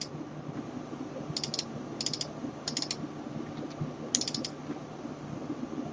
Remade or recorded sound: recorded